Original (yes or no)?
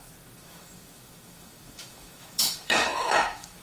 no